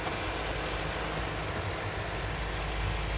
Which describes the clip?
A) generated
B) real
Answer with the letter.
B